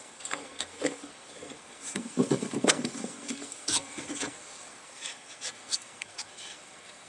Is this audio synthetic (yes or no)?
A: yes